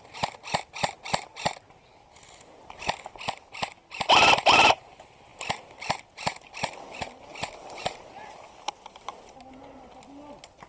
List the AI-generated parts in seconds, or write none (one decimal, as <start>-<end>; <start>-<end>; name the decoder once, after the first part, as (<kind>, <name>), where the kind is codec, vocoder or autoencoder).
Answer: none